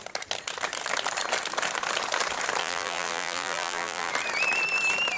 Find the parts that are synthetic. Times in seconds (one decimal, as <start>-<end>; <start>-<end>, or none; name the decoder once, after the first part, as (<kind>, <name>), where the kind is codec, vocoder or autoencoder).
2.6-4.1 (vocoder, BigVGAN v2)